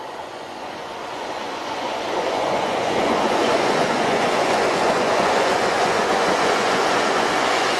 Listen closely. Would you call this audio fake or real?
fake